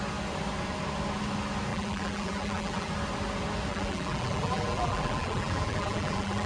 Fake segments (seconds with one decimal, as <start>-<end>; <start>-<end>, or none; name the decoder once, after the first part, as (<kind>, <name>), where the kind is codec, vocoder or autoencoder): 1.7-2.9 (vocoder, BigVGAN v2); 3.7-6.5